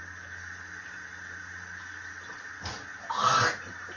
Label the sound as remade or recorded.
recorded